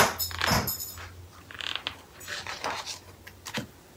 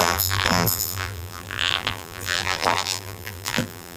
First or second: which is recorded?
first